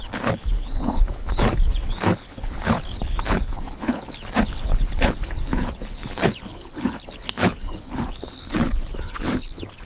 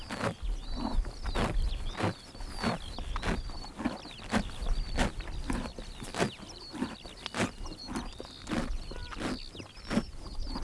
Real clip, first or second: second